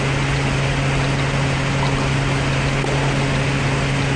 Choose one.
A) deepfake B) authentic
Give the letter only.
B